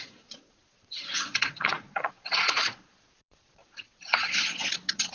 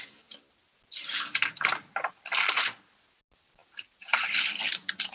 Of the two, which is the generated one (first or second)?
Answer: first